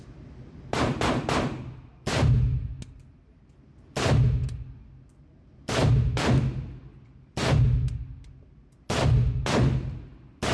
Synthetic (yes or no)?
no